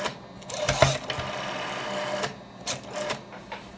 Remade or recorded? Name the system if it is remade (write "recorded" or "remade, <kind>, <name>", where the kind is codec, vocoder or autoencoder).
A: recorded